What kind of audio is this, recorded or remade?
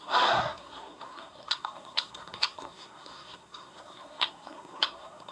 remade